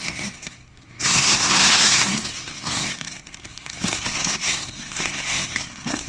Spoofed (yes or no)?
yes